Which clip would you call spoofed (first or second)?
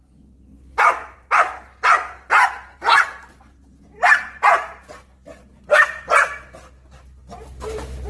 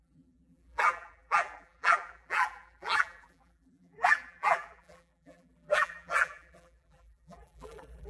second